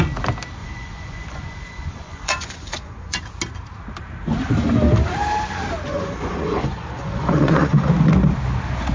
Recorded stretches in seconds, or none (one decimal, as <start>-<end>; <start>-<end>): 0.0-0.6; 3.2-5.9; 7.9-8.9